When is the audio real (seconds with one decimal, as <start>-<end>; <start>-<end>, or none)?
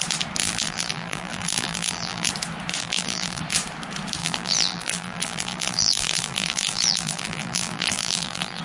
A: 0.0-0.4; 2.3-2.8; 3.4-4.2